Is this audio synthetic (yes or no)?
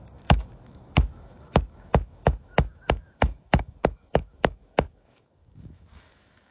yes